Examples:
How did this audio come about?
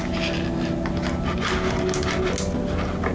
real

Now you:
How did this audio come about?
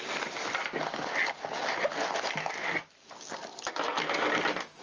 real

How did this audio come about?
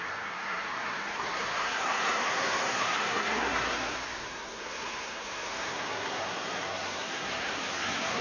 fake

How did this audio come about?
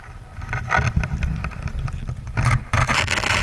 real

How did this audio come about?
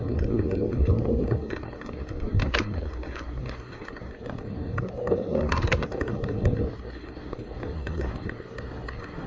fake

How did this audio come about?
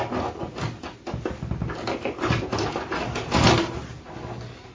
real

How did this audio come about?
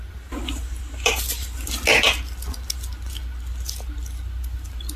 real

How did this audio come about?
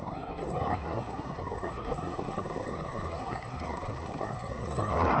fake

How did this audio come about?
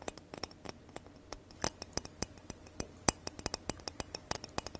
real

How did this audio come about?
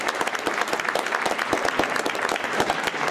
real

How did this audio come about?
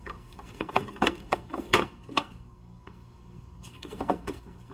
fake